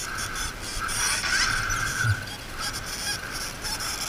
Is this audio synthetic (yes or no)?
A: no